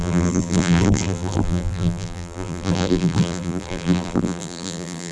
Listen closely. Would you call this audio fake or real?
fake